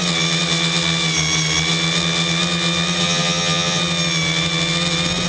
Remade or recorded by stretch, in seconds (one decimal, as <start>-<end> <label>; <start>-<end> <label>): 0.0-3.0 recorded; 3.0-3.8 remade; 3.8-5.3 recorded